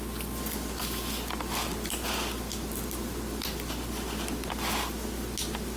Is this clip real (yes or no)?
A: yes